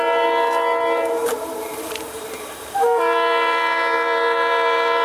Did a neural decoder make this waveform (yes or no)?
yes